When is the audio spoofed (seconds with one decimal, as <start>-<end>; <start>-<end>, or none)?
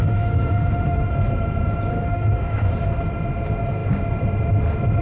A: 0.0-1.1; 1.9-2.7